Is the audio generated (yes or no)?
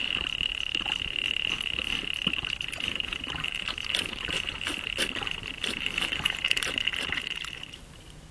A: yes